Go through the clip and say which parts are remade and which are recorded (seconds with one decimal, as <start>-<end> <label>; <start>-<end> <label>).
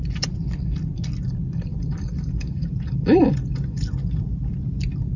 0.0-1.7 recorded; 1.7-4.8 remade; 4.8-5.2 recorded